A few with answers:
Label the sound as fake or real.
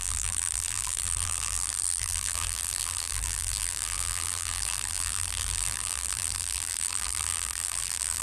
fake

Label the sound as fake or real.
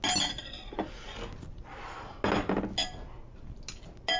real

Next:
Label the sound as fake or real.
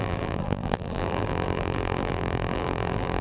fake